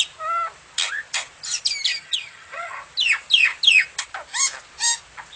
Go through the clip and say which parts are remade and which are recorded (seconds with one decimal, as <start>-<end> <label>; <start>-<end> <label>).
0.0-1.9 recorded; 1.9-2.8 remade; 2.8-5.4 recorded